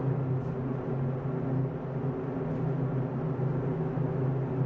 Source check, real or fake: real